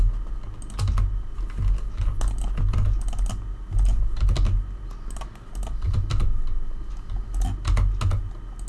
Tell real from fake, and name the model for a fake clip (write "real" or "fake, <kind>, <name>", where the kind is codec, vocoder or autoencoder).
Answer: real